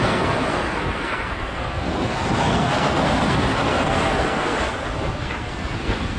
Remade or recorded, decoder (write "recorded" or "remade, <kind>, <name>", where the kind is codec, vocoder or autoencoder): remade, codec, SNAC